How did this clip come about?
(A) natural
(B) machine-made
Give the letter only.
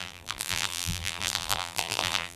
B